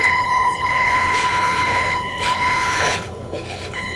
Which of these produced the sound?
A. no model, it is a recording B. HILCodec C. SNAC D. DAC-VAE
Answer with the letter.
B